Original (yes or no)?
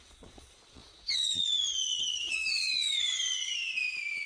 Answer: no